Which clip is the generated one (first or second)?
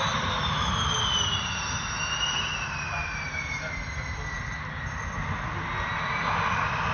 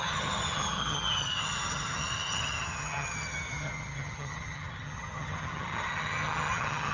second